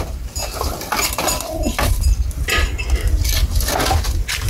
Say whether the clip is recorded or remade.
recorded